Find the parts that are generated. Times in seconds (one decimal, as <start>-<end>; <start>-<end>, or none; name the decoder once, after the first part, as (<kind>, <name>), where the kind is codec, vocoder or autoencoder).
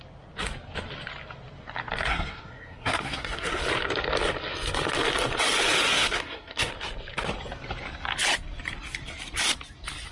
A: 2.1-3.6 (codec, SNAC); 5.9-6.7